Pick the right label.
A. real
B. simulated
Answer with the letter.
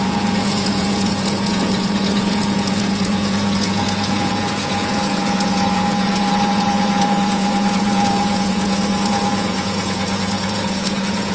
B